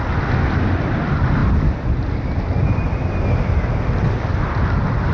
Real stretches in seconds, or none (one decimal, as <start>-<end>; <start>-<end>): 0.0-5.1